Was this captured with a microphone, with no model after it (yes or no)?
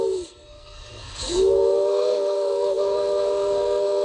no